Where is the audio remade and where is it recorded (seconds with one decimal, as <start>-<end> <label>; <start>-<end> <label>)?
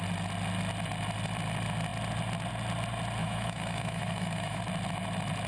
0.0-3.2 recorded; 3.2-4.6 remade; 4.6-5.5 recorded